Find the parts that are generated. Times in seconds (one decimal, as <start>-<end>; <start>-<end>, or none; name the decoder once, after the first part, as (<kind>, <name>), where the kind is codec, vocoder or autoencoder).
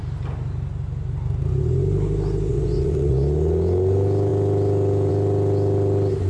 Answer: 2.5-3.1 (vocoder, Vocos)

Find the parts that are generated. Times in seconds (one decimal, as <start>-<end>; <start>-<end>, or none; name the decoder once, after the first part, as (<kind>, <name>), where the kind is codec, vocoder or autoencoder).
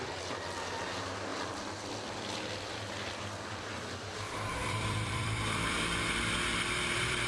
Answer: 4.6-7.3 (vocoder, BigVGAN v2)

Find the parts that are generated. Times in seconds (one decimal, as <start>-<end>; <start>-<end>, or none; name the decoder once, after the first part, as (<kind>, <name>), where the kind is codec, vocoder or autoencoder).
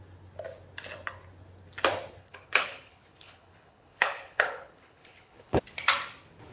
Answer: 2.2-5.6 (codec, HILCodec)